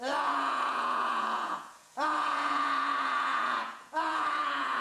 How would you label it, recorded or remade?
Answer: remade